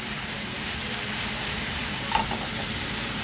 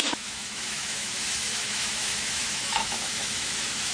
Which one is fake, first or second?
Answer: second